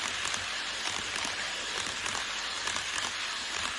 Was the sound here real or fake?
real